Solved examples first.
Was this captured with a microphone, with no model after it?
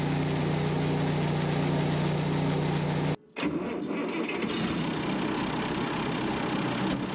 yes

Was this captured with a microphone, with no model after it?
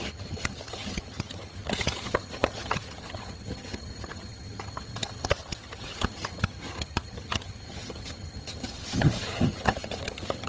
no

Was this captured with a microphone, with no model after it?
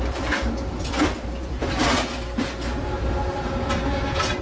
yes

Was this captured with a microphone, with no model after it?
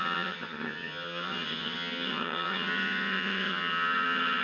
no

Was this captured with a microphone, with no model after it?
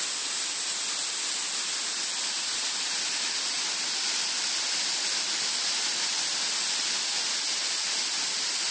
yes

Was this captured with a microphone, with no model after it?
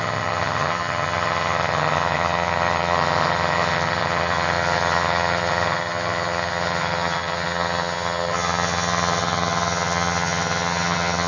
no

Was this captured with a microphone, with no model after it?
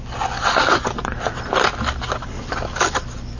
yes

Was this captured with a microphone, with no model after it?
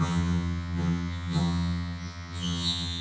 no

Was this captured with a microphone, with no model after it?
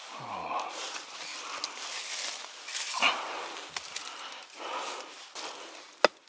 yes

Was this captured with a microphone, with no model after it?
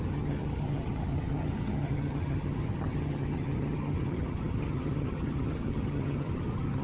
no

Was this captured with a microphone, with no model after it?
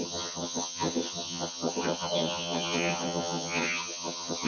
no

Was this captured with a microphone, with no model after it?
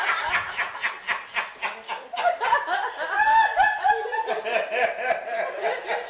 yes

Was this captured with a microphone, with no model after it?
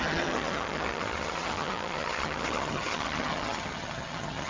no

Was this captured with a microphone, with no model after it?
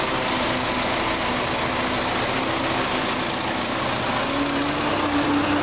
yes